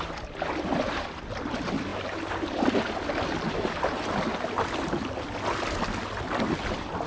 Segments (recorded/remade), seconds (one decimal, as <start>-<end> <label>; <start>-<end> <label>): 0.0-7.1 recorded